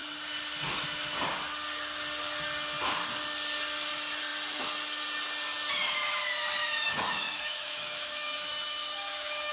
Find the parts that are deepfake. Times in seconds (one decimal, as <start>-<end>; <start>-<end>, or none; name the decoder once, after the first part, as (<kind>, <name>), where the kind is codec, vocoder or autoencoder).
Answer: 6.6-9.5 (autoencoder, DAC-VAE)